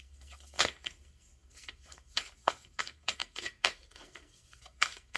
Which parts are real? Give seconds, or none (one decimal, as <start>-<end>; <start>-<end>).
none